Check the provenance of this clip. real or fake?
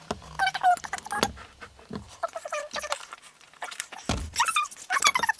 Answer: real